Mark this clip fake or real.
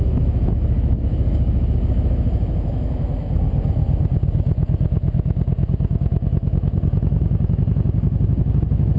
fake